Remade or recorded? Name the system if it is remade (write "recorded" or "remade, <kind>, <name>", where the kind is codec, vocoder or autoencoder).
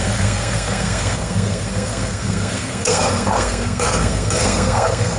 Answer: remade, codec, SNAC